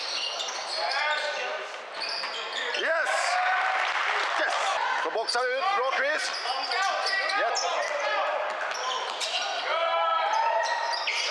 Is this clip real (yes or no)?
yes